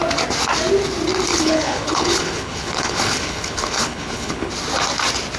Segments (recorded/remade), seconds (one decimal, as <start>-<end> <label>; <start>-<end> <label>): 0.0-1.3 recorded; 1.3-4.5 remade; 4.5-5.4 recorded